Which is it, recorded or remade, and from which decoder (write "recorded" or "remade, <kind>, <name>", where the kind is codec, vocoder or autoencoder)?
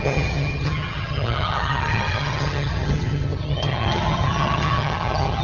remade, vocoder, HiFi-GAN